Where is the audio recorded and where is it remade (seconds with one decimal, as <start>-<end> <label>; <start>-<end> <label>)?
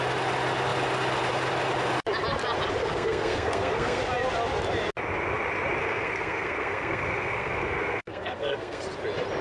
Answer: 0.0-2.8 recorded; 2.8-4.0 remade; 4.0-5.8 recorded; 5.8-8.8 remade; 8.8-9.4 recorded